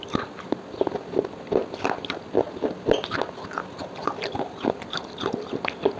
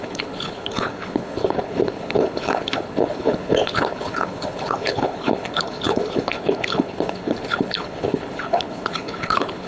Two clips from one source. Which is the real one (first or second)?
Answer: first